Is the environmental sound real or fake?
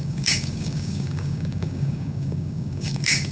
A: fake